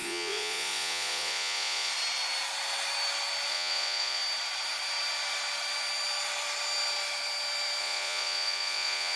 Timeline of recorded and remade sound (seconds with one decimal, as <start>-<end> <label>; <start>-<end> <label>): 0.0-1.9 remade; 1.9-3.5 recorded; 3.5-4.2 remade; 4.2-7.8 recorded; 7.8-9.2 remade